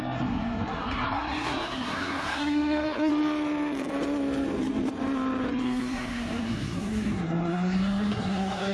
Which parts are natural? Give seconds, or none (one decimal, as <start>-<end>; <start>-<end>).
3.1-5.5